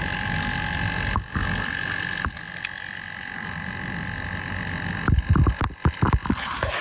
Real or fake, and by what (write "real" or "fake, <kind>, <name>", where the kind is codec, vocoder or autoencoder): real